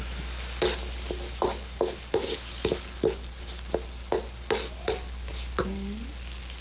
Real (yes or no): yes